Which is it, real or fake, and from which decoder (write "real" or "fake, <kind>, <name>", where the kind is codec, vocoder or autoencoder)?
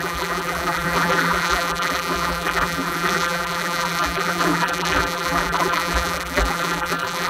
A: fake, vocoder, BigVGAN v2